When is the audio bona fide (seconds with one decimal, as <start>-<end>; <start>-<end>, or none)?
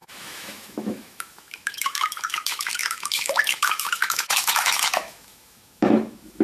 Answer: none